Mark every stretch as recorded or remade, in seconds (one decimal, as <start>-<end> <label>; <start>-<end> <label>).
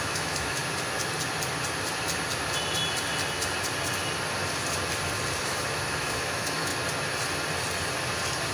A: 0.0-0.6 remade; 0.6-5.4 recorded; 5.4-6.7 remade; 6.7-8.5 recorded